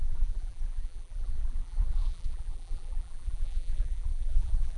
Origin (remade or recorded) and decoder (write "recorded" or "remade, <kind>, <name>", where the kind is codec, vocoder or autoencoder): remade, vocoder, BigVGAN v2